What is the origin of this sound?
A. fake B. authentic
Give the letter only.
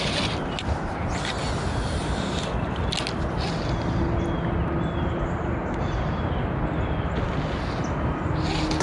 B